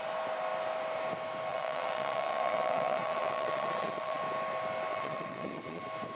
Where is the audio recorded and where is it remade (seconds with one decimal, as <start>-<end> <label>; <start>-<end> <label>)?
0.0-1.5 recorded; 1.5-4.2 remade; 4.2-4.9 recorded; 4.9-5.8 remade; 5.8-6.2 recorded